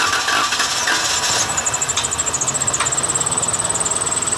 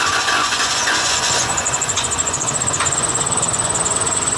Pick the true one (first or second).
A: first